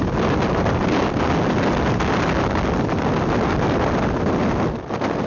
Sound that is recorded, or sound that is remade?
recorded